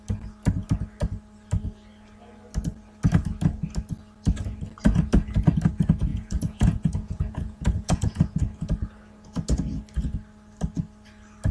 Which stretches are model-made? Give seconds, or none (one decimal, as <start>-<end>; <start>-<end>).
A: 6.1-8.4